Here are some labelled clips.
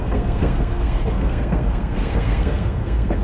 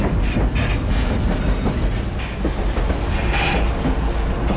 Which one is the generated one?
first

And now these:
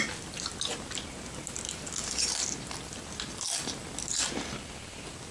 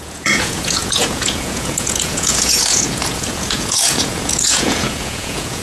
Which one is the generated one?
second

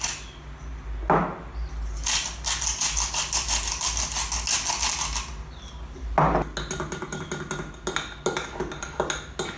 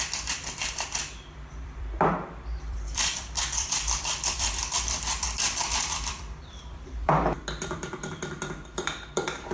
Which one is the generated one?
second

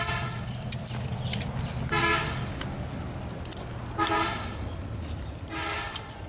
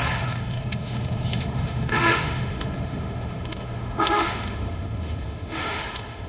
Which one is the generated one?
second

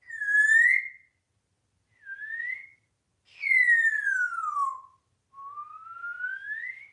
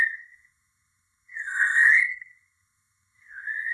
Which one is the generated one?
second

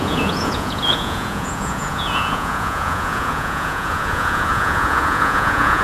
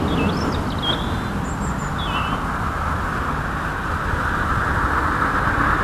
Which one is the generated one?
first